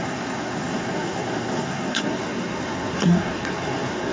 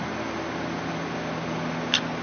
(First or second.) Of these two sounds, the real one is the second